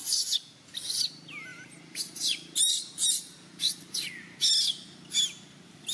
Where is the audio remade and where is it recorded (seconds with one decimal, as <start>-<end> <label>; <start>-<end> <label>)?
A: 0.0-0.7 remade; 0.7-1.5 recorded; 1.5-3.8 remade; 3.8-5.9 recorded